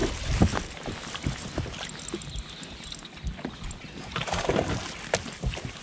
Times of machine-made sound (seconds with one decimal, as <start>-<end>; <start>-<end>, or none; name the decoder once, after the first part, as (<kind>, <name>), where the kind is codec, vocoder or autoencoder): none